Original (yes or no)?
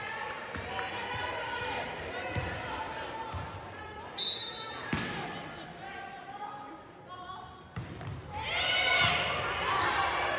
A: yes